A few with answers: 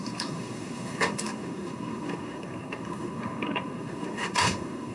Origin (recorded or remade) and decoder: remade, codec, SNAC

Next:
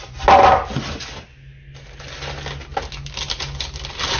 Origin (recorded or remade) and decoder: recorded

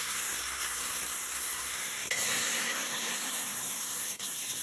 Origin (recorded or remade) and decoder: remade, codec, SNAC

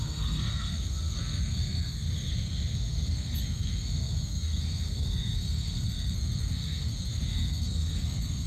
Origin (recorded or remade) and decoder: remade, codec, SNAC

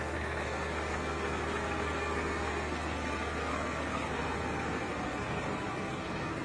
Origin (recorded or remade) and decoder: remade, codec, SNAC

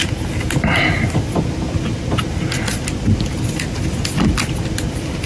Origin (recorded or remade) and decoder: recorded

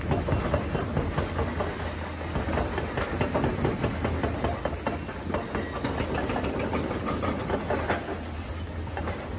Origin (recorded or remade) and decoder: recorded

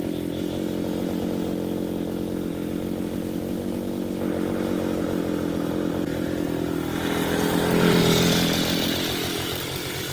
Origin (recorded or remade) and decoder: recorded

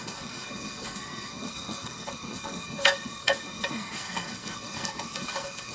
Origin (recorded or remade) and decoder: remade, codec, SNAC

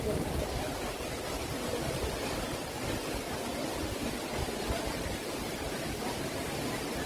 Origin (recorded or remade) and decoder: recorded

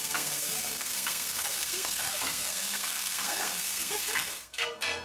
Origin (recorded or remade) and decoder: remade, codec, SNAC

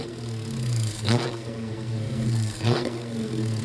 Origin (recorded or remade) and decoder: remade, codec, SNAC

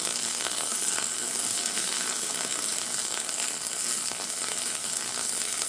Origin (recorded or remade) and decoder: remade, codec, SNAC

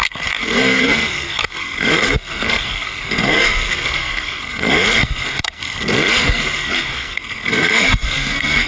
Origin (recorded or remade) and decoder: remade, codec, SNAC